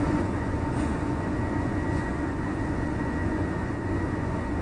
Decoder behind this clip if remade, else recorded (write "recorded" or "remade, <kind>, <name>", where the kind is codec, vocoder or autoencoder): remade, vocoder, Vocos